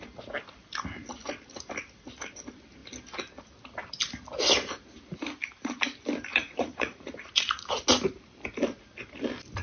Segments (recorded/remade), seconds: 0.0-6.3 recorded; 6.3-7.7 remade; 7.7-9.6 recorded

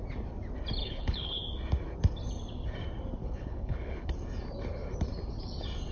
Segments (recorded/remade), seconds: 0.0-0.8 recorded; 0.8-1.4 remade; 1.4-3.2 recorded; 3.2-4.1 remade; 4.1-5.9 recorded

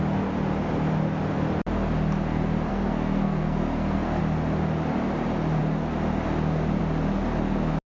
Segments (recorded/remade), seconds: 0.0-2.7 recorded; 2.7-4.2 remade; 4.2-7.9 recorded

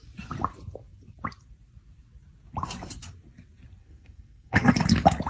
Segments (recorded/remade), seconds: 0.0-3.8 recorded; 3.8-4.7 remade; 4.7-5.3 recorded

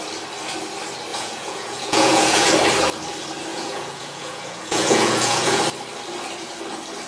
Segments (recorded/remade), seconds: 0.0-1.1 recorded; 1.1-2.5 remade; 2.5-3.5 recorded; 3.5-5.6 remade; 5.6-7.1 recorded

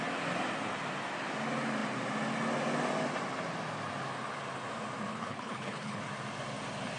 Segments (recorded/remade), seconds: 0.0-5.1 recorded; 5.1-6.0 remade; 6.0-7.0 recorded

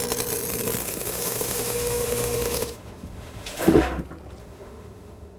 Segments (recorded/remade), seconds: 0.0-0.8 recorded; 0.8-4.0 remade; 4.0-4.4 recorded; 4.4-5.4 remade